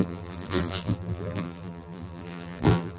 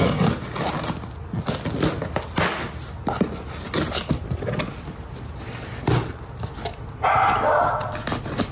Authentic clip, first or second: second